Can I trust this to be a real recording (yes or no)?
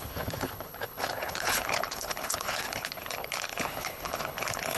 no